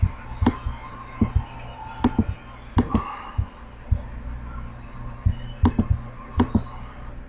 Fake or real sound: real